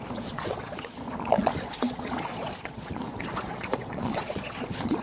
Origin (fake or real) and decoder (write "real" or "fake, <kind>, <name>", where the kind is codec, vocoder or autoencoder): fake, vocoder, Vocos